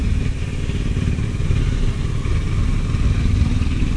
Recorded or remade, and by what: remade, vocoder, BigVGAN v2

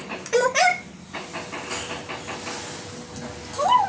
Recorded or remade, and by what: recorded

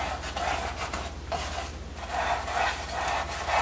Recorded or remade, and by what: recorded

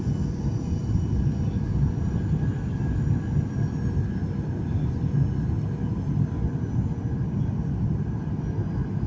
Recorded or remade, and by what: recorded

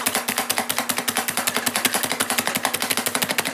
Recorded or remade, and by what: recorded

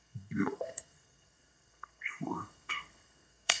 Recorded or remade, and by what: remade, codec, SNAC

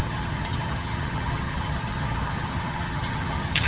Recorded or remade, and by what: remade, vocoder, HiFi-GAN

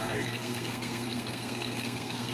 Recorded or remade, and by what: remade, codec, SNAC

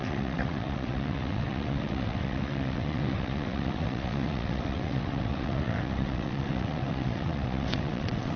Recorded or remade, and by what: remade, vocoder, WaveNeXt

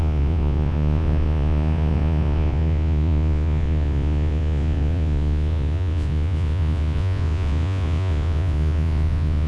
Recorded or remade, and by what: remade, vocoder, Vocos